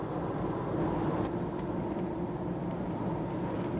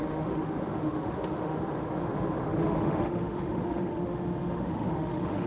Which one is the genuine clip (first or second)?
first